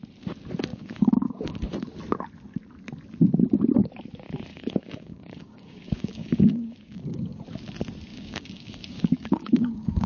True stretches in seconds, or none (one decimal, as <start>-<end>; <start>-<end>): 0.0-0.7; 1.8-4.5; 7.4-8.1